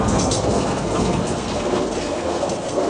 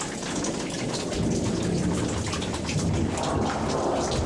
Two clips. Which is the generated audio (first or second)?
first